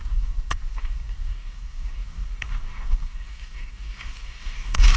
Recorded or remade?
remade